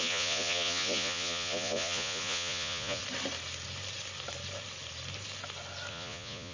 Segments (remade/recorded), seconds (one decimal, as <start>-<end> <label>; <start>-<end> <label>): 0.0-3.0 remade; 3.0-5.9 recorded; 5.9-6.5 remade